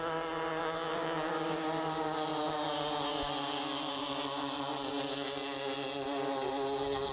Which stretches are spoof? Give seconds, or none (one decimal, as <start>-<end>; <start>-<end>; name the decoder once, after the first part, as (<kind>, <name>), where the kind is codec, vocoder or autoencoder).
0.6-1.3 (vocoder, BigVGAN v2)